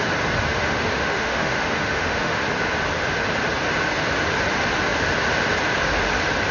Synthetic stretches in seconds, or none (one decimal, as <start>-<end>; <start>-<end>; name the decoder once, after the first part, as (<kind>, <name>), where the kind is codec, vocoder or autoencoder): 0.5-2.4 (autoencoder, DAC-VAE)